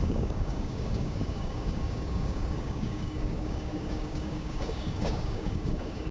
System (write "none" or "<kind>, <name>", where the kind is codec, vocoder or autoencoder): codec, DAC